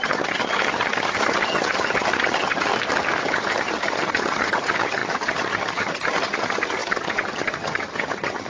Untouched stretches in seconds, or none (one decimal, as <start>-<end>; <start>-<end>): 2.7-3.2